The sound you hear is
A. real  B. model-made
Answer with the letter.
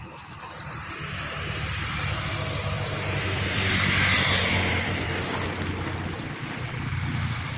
B